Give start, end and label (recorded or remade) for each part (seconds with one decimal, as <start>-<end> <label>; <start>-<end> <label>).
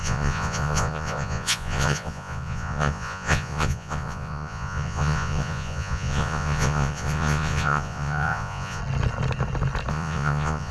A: 0.0-8.8 remade; 8.8-9.9 recorded; 9.9-10.7 remade